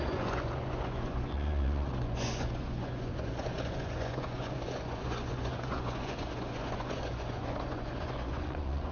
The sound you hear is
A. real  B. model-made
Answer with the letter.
B